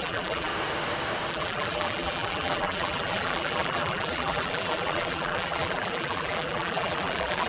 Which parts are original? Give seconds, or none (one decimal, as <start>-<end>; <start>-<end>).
0.5-1.3